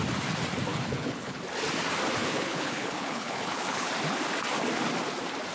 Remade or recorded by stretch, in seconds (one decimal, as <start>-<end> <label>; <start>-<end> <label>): 0.0-0.7 recorded; 0.7-1.4 remade; 1.4-2.2 recorded; 2.2-3.9 remade; 3.9-5.5 recorded

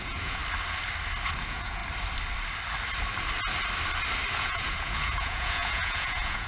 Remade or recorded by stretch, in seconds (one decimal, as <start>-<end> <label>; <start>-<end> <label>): 0.0-0.4 remade; 0.4-1.4 recorded; 1.4-1.8 remade; 1.8-4.3 recorded; 4.3-6.5 remade

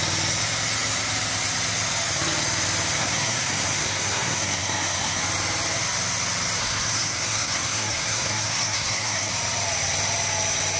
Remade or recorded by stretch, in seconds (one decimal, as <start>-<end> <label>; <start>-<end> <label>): 0.0-3.0 recorded; 3.0-5.2 remade; 5.2-6.6 recorded; 6.6-9.3 remade; 9.3-10.8 recorded

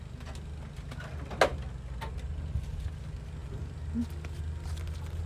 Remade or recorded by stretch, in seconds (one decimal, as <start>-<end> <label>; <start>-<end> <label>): 0.0-5.3 recorded